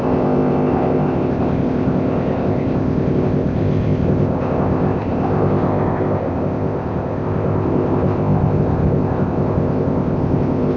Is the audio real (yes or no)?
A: no